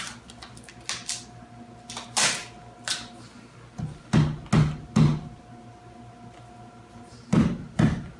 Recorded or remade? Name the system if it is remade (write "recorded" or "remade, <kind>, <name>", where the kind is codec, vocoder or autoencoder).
recorded